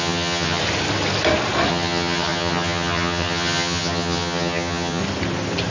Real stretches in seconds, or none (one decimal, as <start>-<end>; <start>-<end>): 0.6-1.7; 5.0-5.7